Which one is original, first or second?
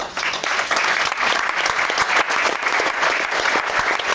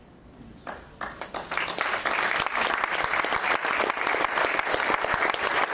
second